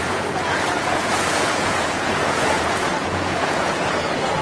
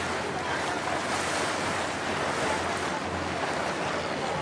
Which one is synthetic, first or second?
first